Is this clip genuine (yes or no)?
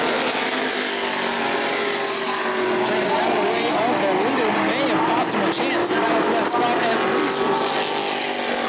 yes